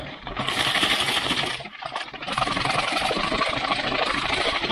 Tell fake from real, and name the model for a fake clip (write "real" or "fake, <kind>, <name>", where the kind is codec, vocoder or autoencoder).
fake, vocoder, BigVGAN v2